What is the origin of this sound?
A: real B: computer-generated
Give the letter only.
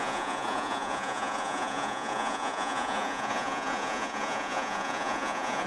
B